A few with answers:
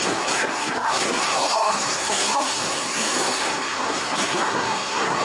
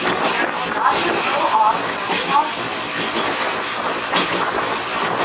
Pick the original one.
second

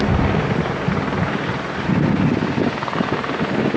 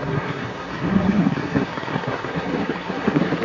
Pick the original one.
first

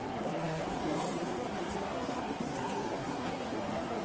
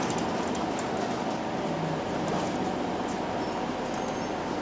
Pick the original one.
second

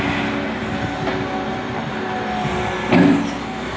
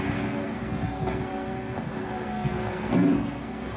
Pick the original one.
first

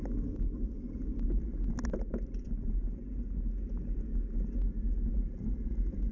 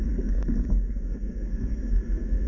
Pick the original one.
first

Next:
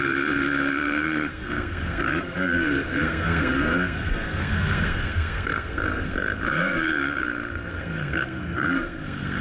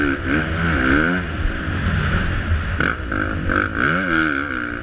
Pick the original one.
second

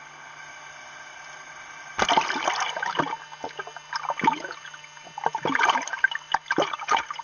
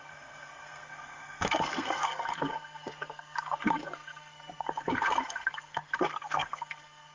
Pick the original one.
first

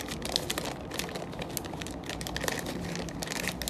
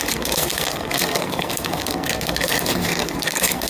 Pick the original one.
first